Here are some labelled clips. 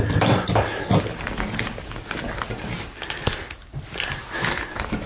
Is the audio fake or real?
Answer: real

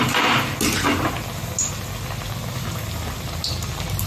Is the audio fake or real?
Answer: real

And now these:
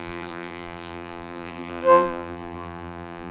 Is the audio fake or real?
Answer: fake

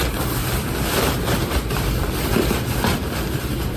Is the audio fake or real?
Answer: fake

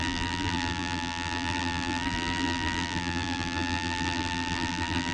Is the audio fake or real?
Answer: fake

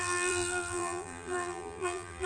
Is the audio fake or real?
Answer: fake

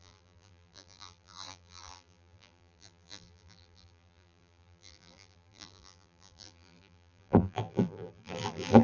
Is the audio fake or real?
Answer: fake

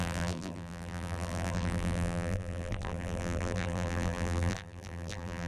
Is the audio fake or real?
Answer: fake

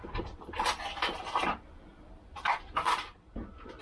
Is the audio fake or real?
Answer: fake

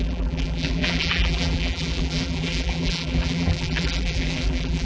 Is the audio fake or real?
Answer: fake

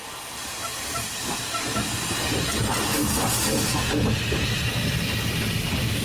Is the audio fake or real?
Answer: real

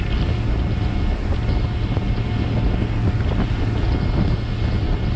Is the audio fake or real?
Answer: real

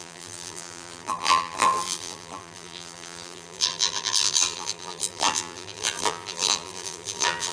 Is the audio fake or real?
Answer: fake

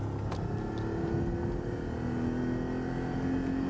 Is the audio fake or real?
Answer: real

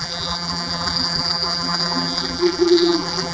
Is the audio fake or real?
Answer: fake